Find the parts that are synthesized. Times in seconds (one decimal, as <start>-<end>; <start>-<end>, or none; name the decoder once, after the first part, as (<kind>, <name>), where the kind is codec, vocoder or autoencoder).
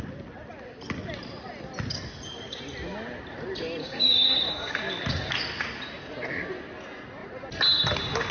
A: 3.8-4.8 (codec, DAC)